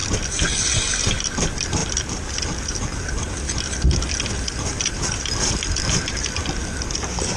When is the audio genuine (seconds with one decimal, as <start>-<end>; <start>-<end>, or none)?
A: 0.0-0.8